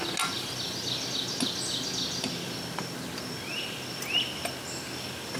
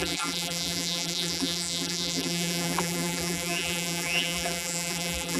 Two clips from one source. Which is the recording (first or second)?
first